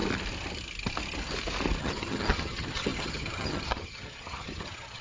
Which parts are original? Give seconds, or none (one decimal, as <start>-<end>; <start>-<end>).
0.0-1.8

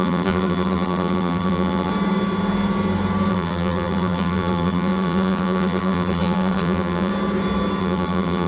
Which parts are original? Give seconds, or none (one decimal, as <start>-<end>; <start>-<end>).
1.9-3.3; 7.1-7.8

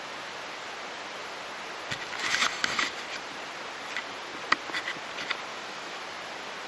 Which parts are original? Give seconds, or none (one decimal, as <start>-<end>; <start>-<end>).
0.0-5.5; 6.0-6.7

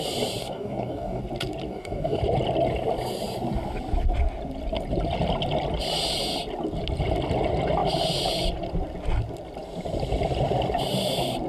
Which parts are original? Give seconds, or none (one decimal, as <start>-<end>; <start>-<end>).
0.0-0.4; 1.2-1.7; 2.2-11.5

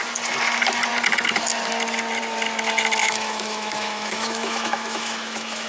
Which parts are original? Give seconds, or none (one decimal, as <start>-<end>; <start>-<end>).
0.0-3.0

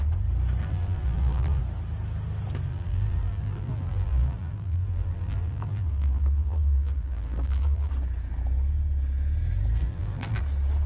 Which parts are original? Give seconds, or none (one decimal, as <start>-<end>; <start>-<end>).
0.0-0.6; 1.6-2.7; 7.9-9.8; 10.4-10.9